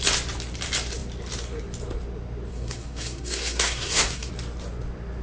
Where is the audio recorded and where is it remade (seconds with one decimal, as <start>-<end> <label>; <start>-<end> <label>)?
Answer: 0.0-2.5 recorded; 2.5-4.3 remade; 4.3-5.2 recorded